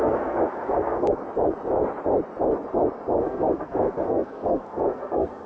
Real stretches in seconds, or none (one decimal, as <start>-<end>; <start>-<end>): 1.2-3.2